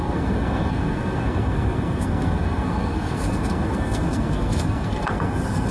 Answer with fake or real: fake